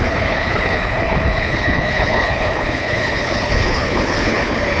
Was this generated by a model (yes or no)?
yes